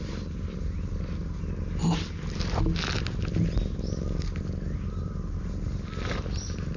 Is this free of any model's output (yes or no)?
yes